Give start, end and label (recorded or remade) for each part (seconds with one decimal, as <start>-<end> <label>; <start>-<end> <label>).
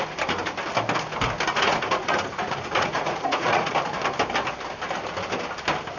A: 0.0-1.5 recorded; 1.5-3.7 remade; 3.7-6.0 recorded